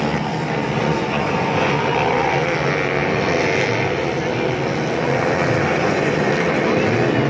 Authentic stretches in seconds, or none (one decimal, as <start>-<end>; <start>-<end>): 0.0-0.8; 1.7-5.7; 6.3-7.3